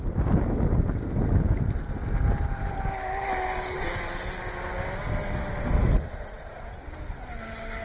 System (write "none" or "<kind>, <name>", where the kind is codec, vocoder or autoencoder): none